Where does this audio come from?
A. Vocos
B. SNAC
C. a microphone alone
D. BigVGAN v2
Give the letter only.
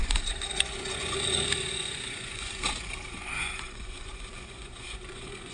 A